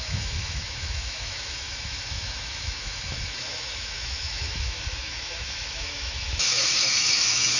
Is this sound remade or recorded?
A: remade